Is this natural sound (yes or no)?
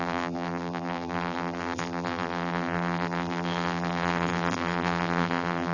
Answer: no